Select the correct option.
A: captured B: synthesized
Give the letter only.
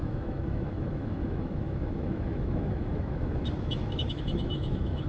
B